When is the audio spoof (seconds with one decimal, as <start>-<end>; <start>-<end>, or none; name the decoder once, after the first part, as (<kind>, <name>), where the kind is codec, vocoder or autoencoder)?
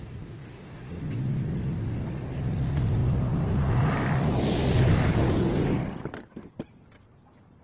0.0-0.4 (vocoder, BigVGAN v2); 0.9-7.6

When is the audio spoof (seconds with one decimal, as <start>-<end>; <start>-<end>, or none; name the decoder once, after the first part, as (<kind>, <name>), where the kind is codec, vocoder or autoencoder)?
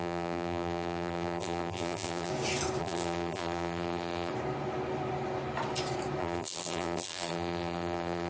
0.0-2.3 (vocoder, BigVGAN v2); 2.8-4.3; 6.2-8.3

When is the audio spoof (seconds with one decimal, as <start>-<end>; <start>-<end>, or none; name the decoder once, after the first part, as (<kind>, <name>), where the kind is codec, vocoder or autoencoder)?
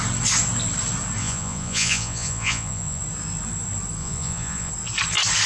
1.2-3.0 (vocoder, Vocos); 4.0-4.7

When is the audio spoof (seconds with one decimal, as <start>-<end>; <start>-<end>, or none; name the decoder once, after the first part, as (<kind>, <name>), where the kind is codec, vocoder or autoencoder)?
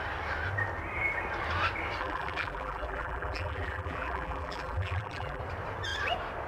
2.0-5.4 (vocoder, BigVGAN v2)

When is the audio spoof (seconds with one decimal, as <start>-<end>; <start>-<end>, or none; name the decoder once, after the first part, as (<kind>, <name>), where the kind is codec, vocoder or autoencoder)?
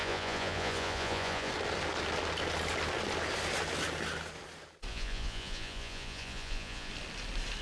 0.0-1.5 (vocoder, Vocos); 4.9-6.9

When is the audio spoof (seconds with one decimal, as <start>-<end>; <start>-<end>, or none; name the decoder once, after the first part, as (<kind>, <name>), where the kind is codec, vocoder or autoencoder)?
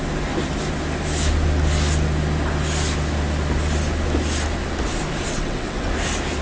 5.3-5.9 (vocoder, WaveNeXt)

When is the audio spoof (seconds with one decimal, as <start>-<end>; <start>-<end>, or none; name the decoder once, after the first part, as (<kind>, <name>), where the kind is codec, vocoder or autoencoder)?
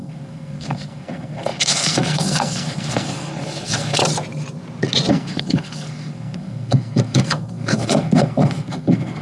0.0-4.0 (codec, SNAC); 5.1-9.2